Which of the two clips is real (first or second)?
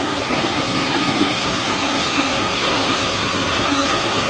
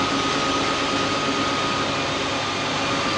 second